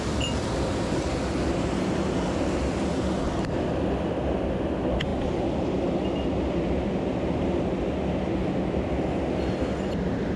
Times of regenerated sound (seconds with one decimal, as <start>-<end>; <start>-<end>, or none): none